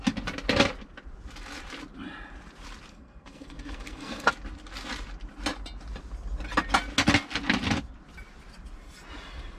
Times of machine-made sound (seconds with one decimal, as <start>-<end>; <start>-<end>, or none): 2.9-4.3